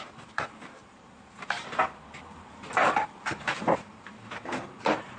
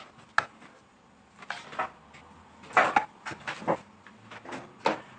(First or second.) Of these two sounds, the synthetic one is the first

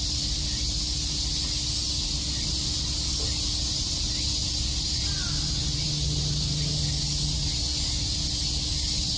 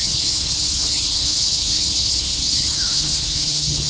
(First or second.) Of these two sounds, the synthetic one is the second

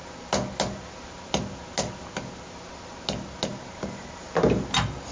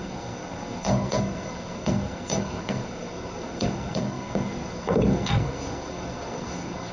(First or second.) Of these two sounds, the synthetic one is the second